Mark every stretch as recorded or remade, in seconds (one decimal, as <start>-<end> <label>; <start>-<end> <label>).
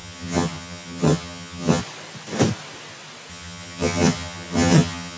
0.0-1.8 remade; 1.8-3.3 recorded; 3.3-5.2 remade